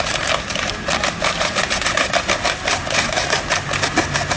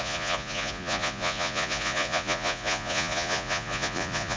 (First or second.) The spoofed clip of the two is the second